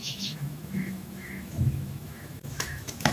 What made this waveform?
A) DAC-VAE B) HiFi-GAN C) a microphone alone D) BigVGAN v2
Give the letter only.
A